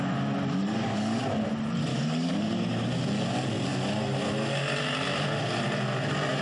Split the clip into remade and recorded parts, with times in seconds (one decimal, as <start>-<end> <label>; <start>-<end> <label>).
0.0-0.6 recorded; 0.6-1.2 remade; 1.2-1.9 recorded; 1.9-2.5 remade; 2.5-6.4 recorded

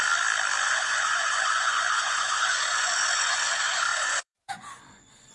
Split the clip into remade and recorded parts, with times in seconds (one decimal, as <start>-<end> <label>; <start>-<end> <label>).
0.0-0.6 recorded; 0.6-5.3 remade

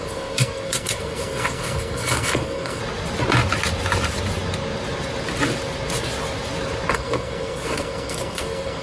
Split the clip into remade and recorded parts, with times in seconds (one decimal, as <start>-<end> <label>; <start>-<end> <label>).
0.0-2.8 remade; 2.8-6.9 recorded; 6.9-8.8 remade

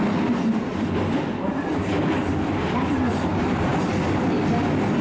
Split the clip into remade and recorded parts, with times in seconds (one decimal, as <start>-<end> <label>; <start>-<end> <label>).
0.0-5.0 recorded

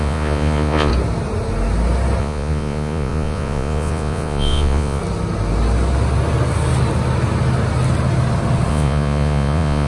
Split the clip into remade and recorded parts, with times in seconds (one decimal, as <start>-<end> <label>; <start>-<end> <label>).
0.0-0.9 remade; 0.9-2.2 recorded; 2.2-5.0 remade; 5.0-8.7 recorded; 8.7-9.9 remade